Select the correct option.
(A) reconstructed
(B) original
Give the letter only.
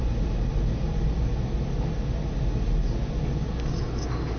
B